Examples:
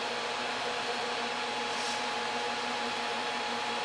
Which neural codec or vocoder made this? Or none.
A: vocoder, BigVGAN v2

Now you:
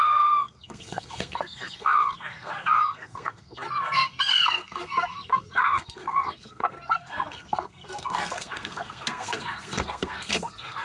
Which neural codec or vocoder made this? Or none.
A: codec, SNAC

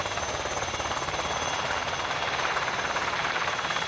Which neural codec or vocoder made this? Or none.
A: vocoder, BigVGAN v2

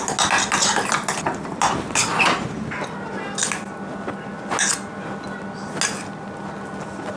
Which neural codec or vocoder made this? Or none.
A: none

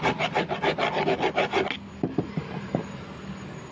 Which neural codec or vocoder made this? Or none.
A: none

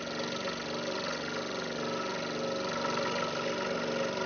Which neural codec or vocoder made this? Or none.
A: none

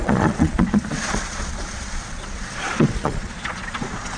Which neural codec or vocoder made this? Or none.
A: vocoder, Vocos